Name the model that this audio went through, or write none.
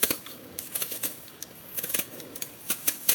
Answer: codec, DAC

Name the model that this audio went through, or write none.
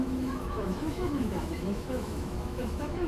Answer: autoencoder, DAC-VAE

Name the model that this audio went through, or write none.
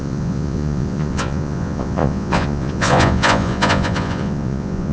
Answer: vocoder, Vocos